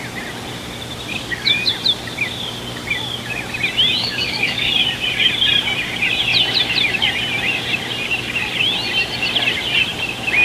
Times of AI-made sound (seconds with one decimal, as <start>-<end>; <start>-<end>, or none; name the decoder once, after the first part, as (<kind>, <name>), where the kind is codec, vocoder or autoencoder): 1.1-1.7 (codec, DAC); 4.0-4.7